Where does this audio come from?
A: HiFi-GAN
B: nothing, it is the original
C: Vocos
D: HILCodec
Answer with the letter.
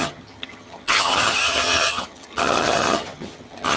A